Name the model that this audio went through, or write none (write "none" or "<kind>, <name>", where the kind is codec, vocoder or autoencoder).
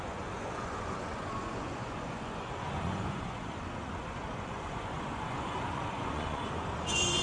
vocoder, Vocos